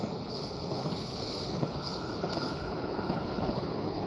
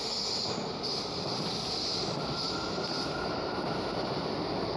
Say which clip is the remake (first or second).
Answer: first